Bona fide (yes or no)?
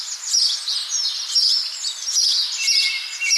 yes